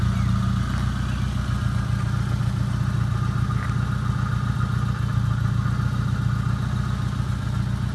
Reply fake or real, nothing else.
real